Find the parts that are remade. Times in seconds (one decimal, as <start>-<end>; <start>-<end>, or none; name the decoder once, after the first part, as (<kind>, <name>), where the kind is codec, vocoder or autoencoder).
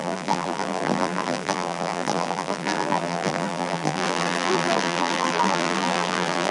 0.0-6.5 (vocoder, BigVGAN v2)